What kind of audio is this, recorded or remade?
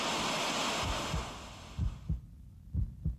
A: recorded